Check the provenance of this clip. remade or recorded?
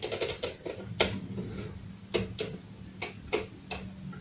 recorded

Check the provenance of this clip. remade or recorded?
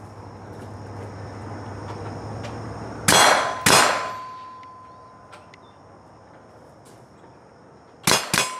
recorded